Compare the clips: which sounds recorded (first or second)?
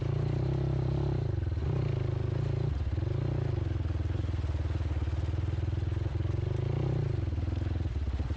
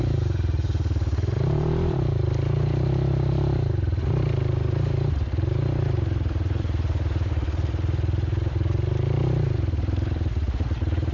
first